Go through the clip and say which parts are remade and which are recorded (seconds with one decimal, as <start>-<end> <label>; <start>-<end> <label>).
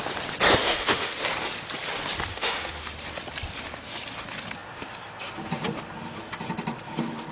0.0-0.6 recorded; 0.6-1.2 remade; 1.2-2.3 recorded; 2.3-2.9 remade; 2.9-7.3 recorded